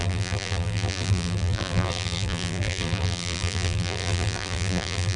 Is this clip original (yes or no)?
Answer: no